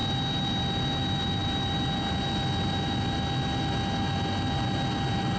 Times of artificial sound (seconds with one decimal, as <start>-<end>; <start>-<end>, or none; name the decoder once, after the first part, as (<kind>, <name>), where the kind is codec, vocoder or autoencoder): none